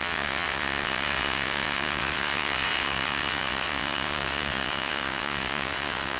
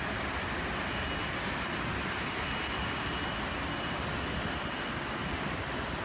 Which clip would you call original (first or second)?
second